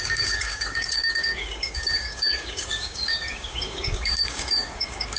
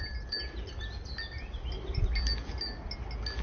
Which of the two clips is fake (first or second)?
first